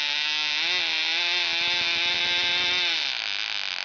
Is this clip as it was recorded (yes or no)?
yes